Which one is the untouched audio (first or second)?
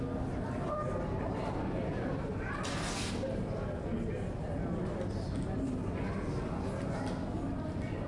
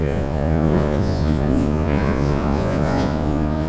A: first